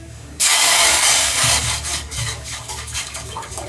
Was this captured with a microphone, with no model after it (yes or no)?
no